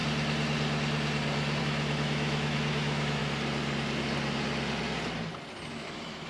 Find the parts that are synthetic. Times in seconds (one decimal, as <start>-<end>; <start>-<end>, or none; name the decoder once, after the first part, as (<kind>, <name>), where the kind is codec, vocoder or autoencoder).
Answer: 1.6-3.2 (autoencoder, DAC-VAE); 5.7-6.3